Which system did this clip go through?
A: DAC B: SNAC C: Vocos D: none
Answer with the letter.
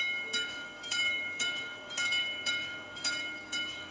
A